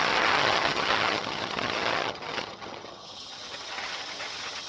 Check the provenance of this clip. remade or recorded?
remade